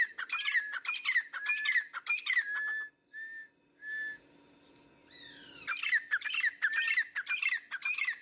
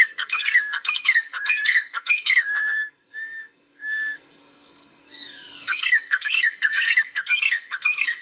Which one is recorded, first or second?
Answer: first